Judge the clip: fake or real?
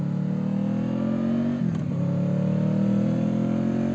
real